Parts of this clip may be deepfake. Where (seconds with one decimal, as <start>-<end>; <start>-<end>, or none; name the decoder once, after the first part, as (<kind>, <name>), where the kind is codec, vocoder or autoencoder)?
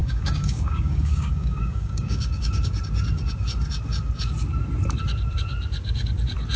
0.0-2.7 (codec, DAC)